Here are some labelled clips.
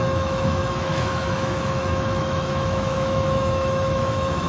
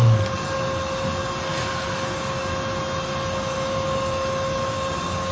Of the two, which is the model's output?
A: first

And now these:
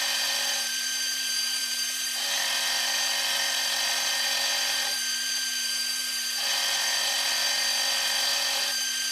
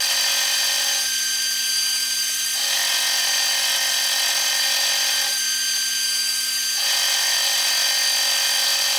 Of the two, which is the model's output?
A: first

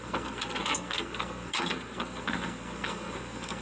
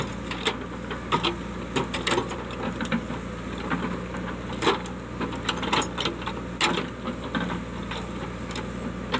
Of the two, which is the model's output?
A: first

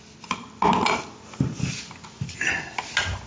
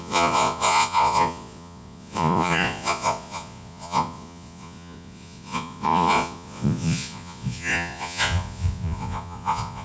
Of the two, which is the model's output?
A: second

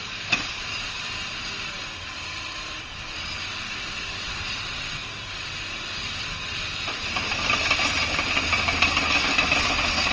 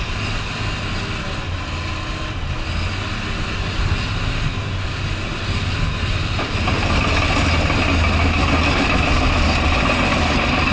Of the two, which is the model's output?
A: first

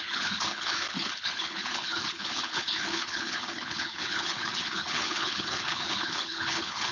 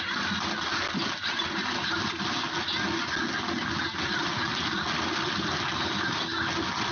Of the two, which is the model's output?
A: first